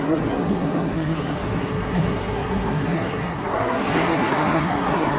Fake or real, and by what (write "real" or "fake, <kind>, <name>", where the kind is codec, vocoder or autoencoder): fake, codec, SNAC